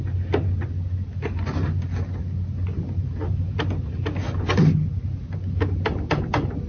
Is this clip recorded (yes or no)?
yes